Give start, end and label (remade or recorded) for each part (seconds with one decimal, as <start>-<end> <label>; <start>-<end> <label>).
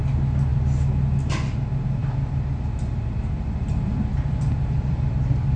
0.0-2.0 recorded; 2.0-5.6 remade